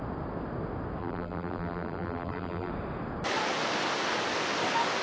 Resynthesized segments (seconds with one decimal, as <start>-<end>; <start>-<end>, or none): 1.0-2.7